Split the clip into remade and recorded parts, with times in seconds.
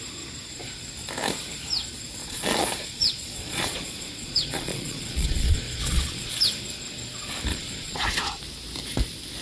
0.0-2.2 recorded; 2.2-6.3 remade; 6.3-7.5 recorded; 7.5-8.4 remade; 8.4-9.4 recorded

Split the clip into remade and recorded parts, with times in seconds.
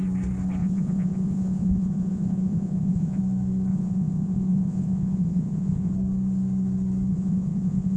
0.0-0.6 recorded; 0.6-3.2 remade; 3.2-3.7 recorded; 3.7-5.9 remade; 5.9-7.1 recorded; 7.1-8.0 remade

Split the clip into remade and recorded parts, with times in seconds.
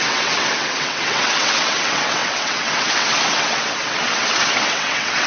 0.0-5.3 remade